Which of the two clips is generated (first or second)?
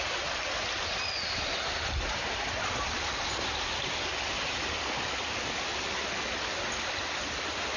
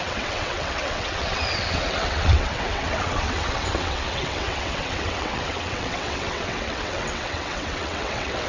second